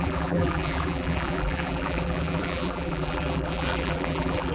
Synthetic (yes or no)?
yes